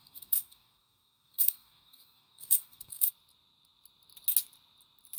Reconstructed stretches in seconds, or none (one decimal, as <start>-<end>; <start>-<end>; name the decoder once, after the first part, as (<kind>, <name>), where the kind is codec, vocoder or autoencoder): 0.0-3.1 (codec, DAC)